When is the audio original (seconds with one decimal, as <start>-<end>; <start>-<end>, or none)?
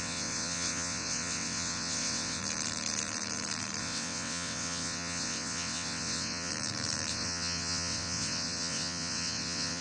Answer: 2.4-3.8; 6.5-7.1